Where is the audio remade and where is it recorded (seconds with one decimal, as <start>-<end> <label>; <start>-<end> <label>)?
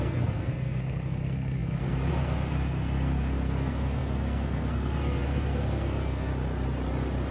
0.0-6.3 remade; 6.3-7.3 recorded